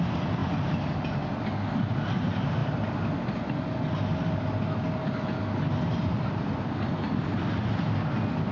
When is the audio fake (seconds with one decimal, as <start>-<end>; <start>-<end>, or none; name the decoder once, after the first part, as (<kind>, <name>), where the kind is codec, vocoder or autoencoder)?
none